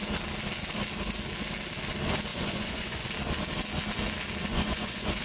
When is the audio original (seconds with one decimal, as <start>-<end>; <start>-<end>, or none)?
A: 0.0-2.3; 3.1-4.5